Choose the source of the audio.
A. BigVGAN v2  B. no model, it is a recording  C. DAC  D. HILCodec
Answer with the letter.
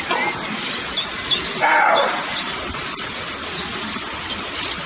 B